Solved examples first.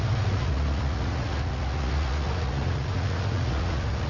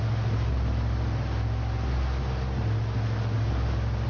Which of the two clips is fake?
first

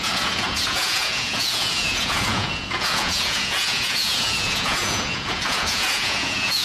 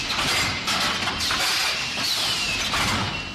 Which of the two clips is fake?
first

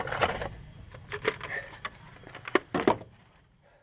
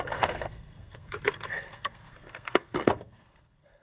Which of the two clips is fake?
second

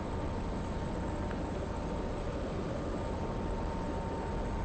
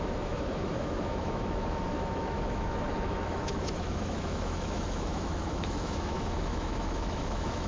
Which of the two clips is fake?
second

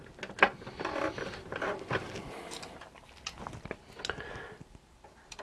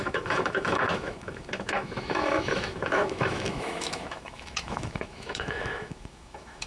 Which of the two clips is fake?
second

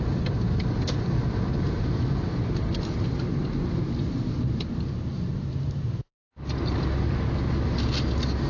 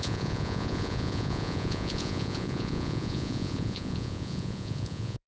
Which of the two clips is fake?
second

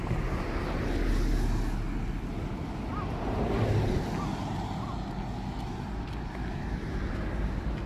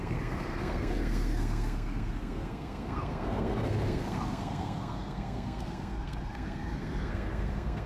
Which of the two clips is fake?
second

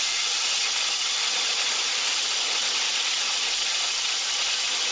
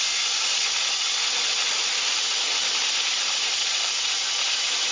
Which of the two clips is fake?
first